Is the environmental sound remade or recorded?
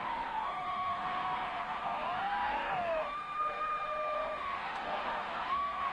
remade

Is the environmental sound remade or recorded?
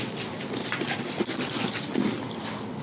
recorded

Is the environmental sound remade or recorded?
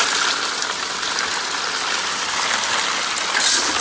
recorded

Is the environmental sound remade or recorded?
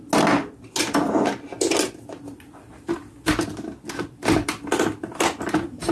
recorded